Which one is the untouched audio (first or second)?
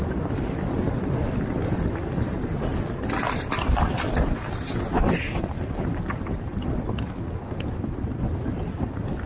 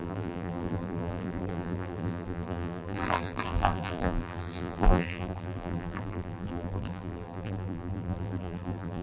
first